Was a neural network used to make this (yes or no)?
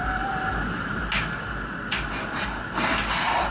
no